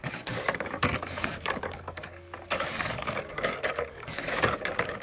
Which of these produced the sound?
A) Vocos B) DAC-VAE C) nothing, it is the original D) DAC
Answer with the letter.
D